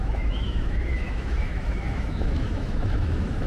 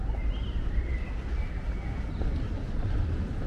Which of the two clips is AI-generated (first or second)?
first